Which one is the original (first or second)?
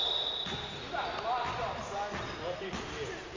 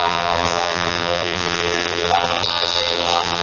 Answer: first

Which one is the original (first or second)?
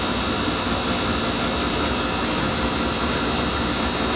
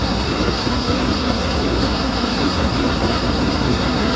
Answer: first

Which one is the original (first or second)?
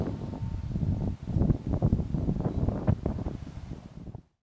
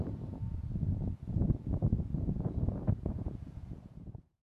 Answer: first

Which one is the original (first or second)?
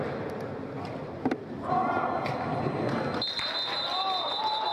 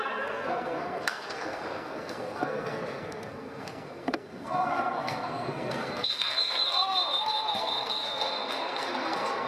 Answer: first